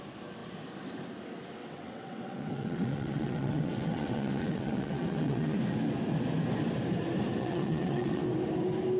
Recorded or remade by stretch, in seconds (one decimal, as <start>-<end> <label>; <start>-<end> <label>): 0.0-1.6 recorded; 1.6-5.6 remade; 5.6-7.4 recorded; 7.4-8.2 remade; 8.2-9.0 recorded